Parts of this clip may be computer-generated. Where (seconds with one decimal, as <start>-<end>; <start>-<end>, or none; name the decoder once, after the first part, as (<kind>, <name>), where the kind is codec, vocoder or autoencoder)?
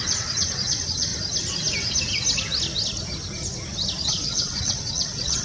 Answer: 0.0-1.1 (vocoder, WaveNeXt); 4.1-5.4